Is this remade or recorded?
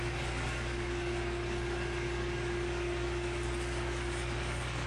remade